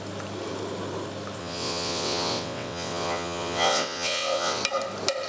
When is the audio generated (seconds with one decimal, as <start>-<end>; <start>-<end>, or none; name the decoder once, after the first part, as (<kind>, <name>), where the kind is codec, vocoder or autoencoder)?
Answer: 1.4-4.6 (vocoder, WaveNeXt)